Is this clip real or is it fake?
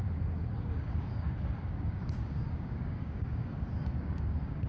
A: fake